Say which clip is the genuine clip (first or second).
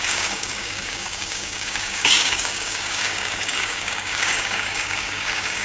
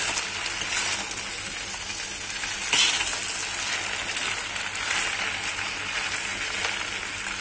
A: second